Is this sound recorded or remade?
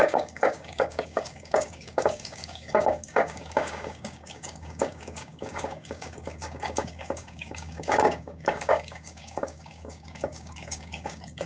remade